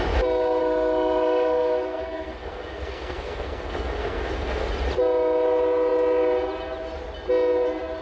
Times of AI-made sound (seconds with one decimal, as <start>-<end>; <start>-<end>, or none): 0.6-4.7